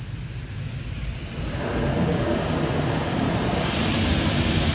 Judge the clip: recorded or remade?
recorded